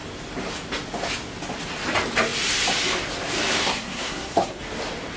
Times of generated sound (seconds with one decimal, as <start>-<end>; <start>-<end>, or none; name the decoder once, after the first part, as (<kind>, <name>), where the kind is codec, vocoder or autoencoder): 3.6-4.6 (codec, SNAC)